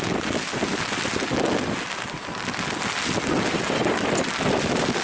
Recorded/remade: recorded